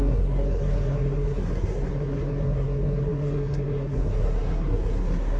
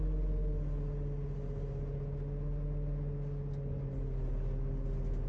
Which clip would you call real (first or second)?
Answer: second